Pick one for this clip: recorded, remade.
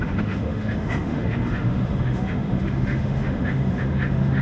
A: remade